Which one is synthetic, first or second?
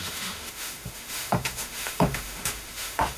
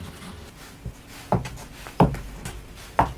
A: first